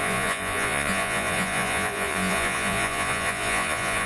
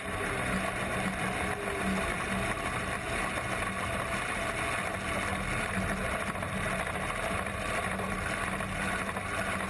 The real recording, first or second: second